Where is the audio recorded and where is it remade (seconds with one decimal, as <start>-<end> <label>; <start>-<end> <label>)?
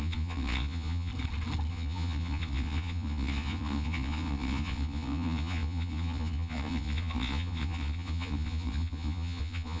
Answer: 0.0-1.1 remade; 1.1-1.7 recorded; 1.7-9.8 remade